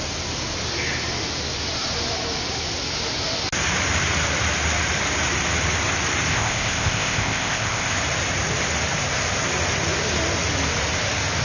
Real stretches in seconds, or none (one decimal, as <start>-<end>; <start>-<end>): 0.0-6.3; 7.9-11.4